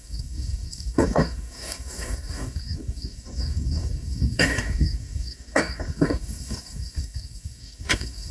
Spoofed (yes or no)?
yes